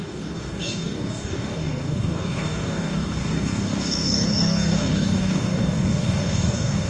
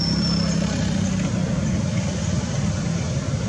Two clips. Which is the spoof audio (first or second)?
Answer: first